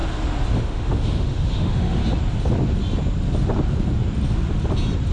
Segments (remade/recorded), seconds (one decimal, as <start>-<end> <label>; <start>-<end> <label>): 0.0-0.6 recorded; 0.6-2.0 remade; 2.0-5.1 recorded